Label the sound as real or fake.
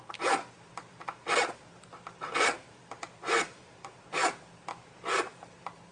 fake